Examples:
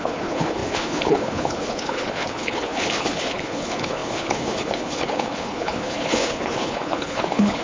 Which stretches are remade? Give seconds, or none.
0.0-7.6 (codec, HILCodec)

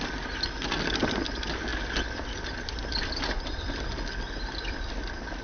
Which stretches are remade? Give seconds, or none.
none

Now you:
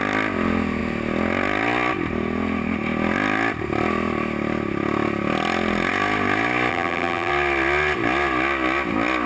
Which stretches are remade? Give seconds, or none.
6.7-7.3 (vocoder, BigVGAN v2)

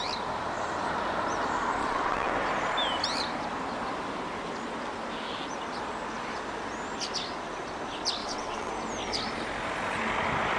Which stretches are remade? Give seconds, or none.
1.8-2.3 (vocoder, WaveNeXt); 8.2-8.7

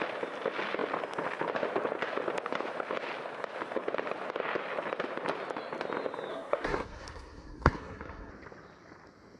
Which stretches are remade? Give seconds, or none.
6.3-8.3 (codec, SNAC)